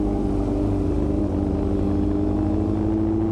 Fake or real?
real